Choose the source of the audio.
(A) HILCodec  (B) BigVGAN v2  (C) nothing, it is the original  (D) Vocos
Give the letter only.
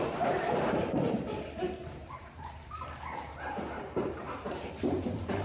B